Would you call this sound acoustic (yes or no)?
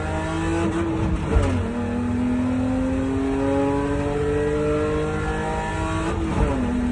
yes